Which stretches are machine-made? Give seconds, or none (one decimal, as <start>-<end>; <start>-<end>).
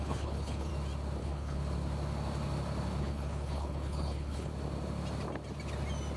0.0-0.7; 1.2-1.6; 3.0-4.5